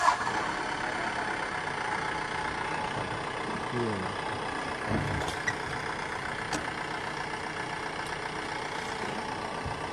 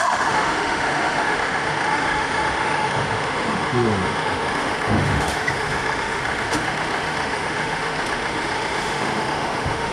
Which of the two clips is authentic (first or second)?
first